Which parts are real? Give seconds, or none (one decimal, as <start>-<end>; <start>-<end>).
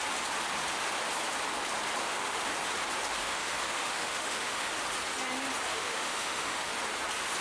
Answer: 0.0-2.0; 2.5-3.2; 4.7-5.7; 6.7-7.4